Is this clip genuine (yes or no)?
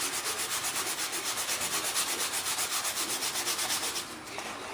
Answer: yes